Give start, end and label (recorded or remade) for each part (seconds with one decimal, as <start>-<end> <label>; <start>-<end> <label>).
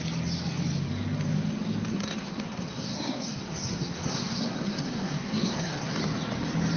0.0-1.9 recorded; 1.9-6.0 remade; 6.0-6.8 recorded